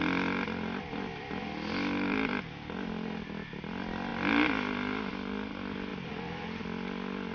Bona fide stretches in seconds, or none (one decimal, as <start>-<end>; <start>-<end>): 0.0-7.3